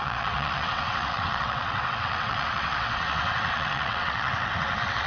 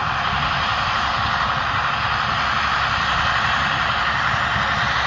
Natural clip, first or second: second